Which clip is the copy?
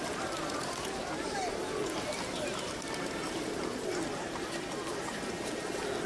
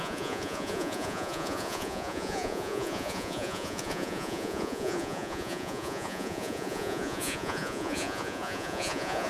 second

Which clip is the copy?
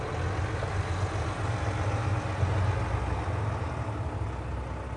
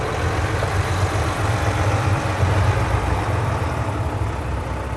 second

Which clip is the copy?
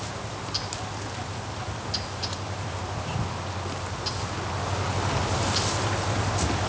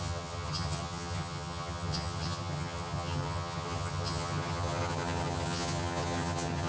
second